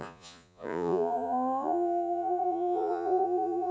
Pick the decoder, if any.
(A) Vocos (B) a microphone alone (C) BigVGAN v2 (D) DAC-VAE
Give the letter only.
A